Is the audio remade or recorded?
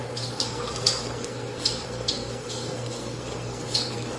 remade